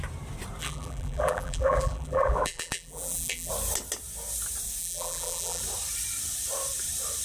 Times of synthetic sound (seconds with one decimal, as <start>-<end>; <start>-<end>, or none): 0.6-3.5; 4.8-5.6

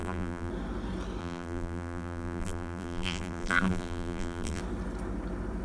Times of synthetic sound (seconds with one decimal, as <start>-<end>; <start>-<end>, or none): 0.0-0.5; 1.2-4.6